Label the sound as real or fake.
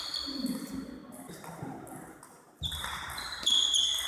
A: real